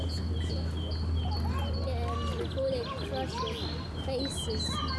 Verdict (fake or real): real